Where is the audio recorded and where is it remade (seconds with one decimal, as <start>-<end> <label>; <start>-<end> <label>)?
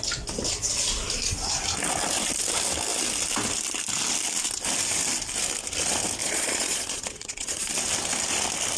0.0-6.2 recorded; 6.2-7.7 remade; 7.7-8.8 recorded